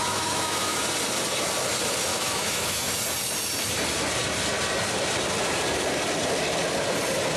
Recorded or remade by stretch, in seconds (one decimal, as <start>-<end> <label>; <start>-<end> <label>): 0.0-0.8 remade; 0.8-2.1 recorded; 2.1-2.9 remade; 2.9-7.4 recorded

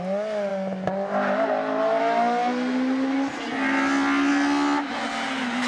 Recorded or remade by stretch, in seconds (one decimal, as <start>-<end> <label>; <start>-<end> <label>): 0.0-5.7 recorded

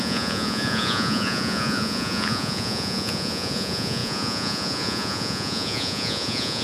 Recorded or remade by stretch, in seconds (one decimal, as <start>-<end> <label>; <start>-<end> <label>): 0.0-6.6 remade

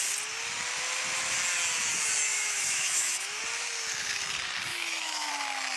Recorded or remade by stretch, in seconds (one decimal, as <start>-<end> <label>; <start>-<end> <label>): 0.0-2.3 recorded; 2.3-3.4 remade; 3.4-4.7 recorded; 4.7-5.3 remade; 5.3-5.8 recorded